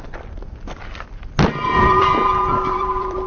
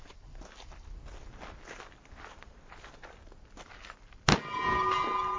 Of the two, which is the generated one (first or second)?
first